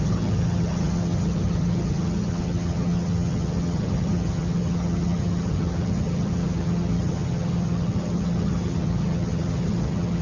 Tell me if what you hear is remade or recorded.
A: remade